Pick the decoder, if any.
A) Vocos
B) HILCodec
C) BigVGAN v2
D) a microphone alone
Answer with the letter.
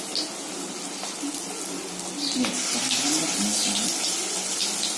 D